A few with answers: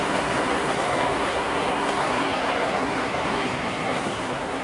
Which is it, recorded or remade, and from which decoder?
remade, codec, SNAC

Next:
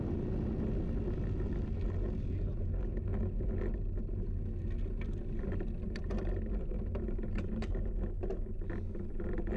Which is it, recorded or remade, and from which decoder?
recorded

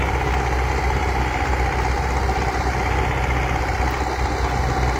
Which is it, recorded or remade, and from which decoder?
recorded